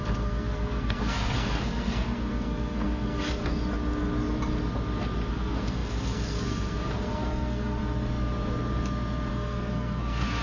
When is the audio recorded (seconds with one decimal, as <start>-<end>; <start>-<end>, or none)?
3.4-5.3; 7.8-9.3